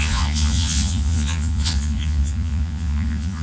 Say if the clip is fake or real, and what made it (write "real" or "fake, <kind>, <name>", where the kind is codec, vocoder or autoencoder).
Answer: fake, vocoder, Vocos